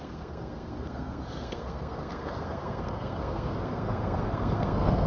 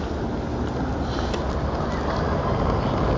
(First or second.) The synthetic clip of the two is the first